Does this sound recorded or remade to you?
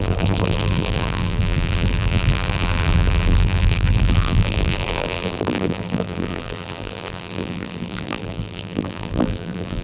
remade